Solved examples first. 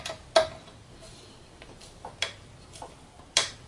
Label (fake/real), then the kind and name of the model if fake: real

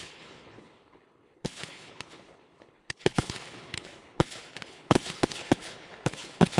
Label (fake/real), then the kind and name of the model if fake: fake, codec, HILCodec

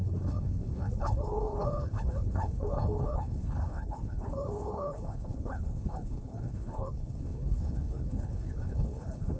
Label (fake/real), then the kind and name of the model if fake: fake, codec, HILCodec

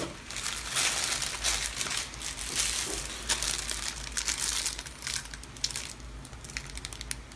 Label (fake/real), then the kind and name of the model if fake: real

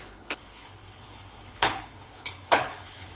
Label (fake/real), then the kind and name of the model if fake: fake, codec, HILCodec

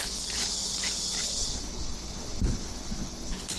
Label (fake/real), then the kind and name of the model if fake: fake, codec, HILCodec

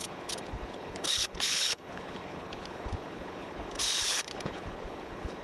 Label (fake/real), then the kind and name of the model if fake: fake, codec, HILCodec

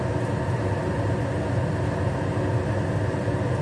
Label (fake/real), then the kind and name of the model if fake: real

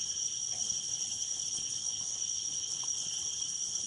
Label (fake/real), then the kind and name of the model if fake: fake, codec, HILCodec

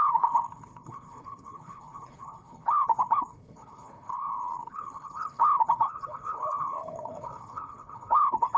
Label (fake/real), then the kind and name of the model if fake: fake, codec, HILCodec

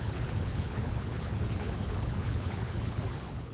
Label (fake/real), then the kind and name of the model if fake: fake, codec, HILCodec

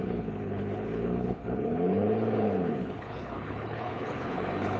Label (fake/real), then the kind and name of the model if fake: fake, codec, HILCodec